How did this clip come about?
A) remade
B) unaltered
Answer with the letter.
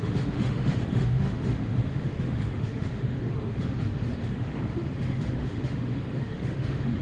A